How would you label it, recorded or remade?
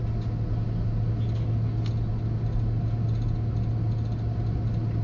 recorded